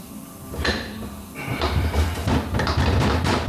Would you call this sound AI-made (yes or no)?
yes